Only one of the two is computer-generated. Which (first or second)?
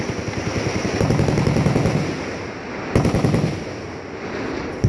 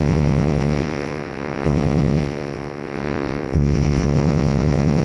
second